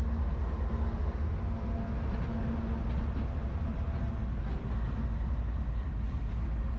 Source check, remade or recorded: recorded